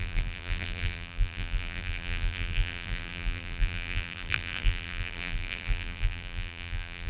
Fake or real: fake